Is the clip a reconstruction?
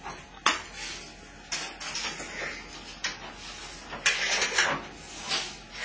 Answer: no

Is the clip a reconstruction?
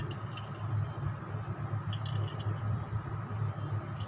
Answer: no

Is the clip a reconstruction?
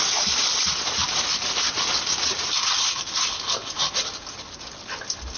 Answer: no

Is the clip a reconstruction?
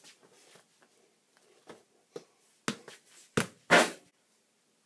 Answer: no